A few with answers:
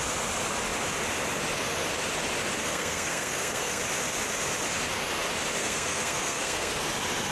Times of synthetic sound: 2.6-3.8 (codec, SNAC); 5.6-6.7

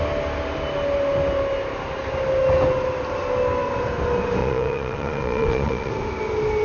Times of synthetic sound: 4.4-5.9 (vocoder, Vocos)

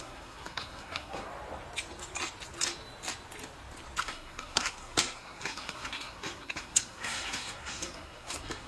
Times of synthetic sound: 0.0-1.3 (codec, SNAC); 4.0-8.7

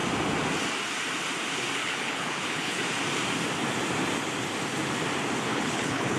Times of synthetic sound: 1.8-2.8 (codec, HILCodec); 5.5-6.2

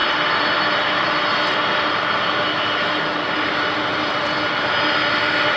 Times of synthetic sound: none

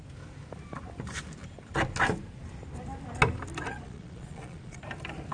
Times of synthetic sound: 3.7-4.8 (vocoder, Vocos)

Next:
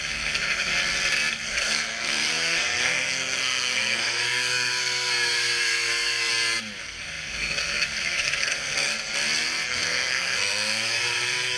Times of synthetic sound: 0.0-0.7 (codec, SNAC); 1.3-6.3; 6.8-8.9; 9.7-11.6